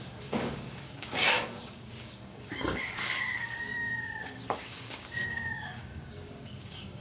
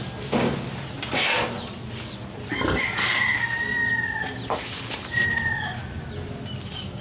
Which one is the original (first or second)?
second